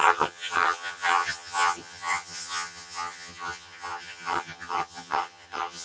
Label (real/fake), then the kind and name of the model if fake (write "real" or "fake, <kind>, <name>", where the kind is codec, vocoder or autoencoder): fake, vocoder, HiFi-GAN